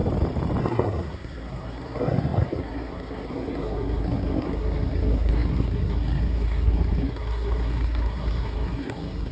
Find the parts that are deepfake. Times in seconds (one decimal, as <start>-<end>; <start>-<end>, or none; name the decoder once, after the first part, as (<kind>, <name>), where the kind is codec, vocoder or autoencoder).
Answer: 0.6-9.3 (codec, SNAC)